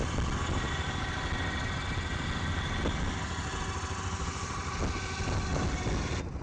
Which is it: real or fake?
real